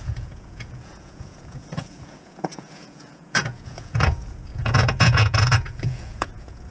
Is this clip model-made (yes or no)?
yes